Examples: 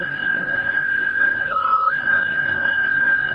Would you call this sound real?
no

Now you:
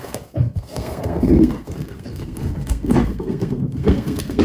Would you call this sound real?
no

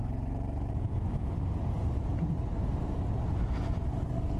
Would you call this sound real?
yes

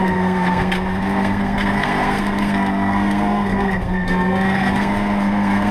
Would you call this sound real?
no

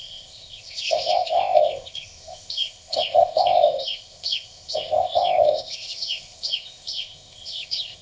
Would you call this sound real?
no